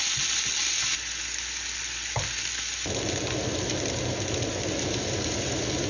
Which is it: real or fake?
real